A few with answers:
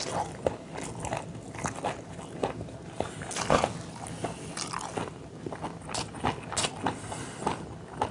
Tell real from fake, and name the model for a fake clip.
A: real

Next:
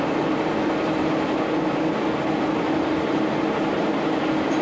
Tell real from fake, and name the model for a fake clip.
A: real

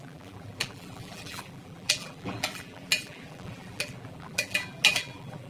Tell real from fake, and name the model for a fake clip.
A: fake, vocoder, BigVGAN v2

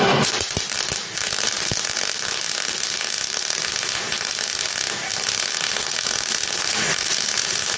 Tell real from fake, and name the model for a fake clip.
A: fake, vocoder, BigVGAN v2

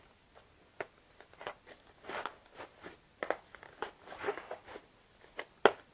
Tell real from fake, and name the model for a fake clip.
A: real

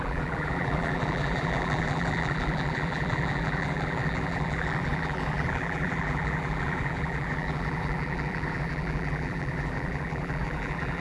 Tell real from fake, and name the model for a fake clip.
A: fake, vocoder, BigVGAN v2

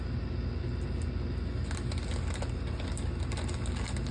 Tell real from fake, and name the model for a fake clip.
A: real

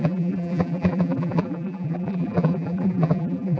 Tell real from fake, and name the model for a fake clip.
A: fake, vocoder, BigVGAN v2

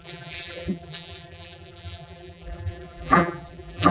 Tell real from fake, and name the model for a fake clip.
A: fake, vocoder, BigVGAN v2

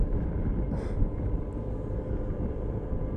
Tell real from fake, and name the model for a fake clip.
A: fake, vocoder, BigVGAN v2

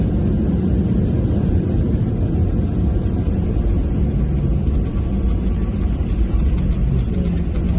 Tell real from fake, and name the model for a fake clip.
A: fake, vocoder, BigVGAN v2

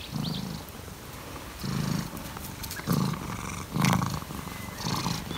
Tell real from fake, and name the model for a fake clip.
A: real